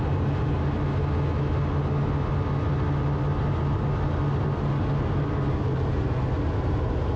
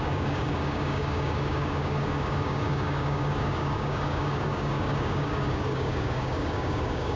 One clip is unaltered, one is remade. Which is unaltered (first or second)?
first